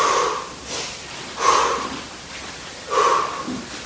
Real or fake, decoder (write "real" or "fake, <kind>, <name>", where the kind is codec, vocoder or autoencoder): fake, vocoder, BigVGAN v2